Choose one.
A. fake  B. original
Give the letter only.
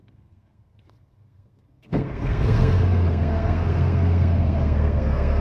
A